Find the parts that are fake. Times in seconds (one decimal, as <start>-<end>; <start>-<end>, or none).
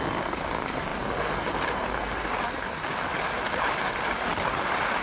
none